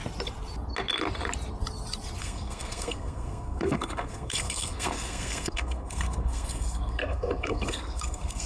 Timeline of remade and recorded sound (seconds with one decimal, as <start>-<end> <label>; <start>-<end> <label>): 0.0-2.2 recorded; 2.2-8.5 remade